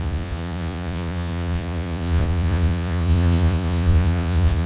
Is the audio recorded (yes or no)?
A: no